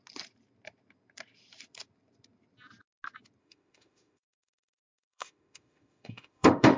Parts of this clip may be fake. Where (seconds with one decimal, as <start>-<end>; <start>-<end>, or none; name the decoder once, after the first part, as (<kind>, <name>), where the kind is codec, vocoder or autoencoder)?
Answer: 3.4-6.8 (autoencoder, DAC-VAE)